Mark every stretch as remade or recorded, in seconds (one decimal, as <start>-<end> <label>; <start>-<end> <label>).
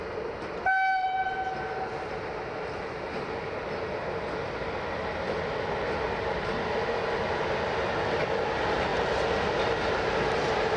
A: 0.0-10.8 recorded